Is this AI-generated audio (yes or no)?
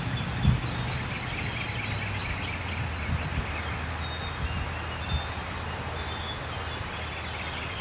no